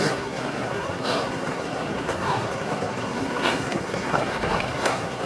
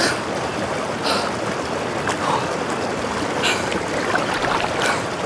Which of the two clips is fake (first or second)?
first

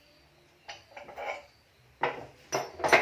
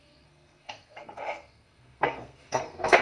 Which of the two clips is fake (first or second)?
second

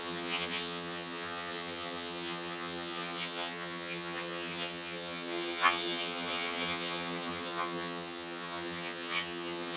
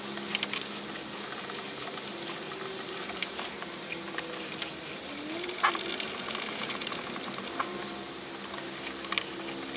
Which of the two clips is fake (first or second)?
first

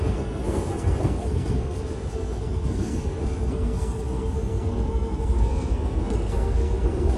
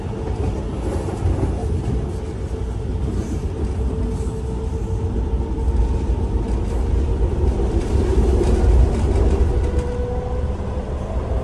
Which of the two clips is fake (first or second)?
first